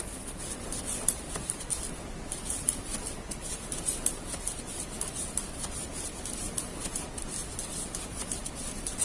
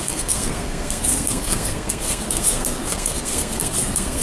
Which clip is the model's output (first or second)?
second